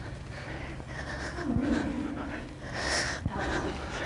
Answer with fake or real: real